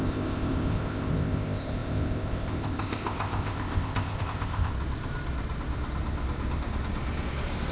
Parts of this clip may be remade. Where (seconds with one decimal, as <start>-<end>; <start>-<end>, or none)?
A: 0.0-4.7